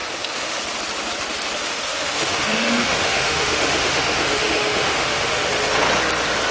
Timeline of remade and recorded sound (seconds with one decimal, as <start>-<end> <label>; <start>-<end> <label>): 0.0-0.6 remade; 0.6-1.6 recorded; 1.6-5.5 remade; 5.5-6.5 recorded